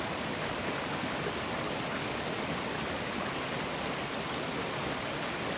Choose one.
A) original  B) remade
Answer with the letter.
A